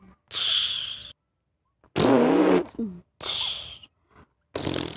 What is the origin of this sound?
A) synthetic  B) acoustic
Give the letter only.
B